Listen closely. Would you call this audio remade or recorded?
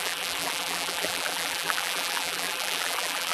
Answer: remade